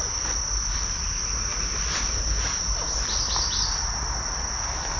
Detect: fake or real real